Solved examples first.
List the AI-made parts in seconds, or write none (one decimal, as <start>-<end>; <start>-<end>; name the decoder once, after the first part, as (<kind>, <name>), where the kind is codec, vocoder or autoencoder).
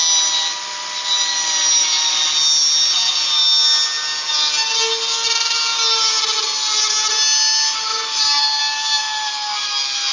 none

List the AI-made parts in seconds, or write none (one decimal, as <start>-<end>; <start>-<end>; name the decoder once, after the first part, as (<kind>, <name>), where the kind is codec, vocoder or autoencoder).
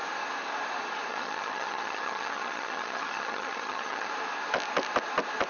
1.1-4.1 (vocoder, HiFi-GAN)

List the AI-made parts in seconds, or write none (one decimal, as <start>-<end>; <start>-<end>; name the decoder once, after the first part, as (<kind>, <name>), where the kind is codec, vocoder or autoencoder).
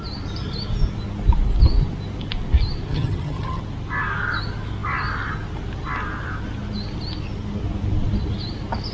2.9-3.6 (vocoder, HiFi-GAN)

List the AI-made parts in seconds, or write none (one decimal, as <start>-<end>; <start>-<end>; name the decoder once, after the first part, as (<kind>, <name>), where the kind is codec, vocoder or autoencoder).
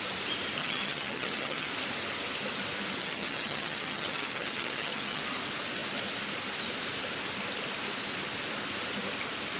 0.6-1.7 (vocoder, HiFi-GAN); 3.0-5.2